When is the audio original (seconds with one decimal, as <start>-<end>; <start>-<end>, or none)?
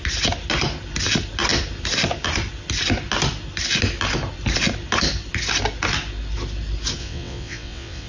0.0-7.0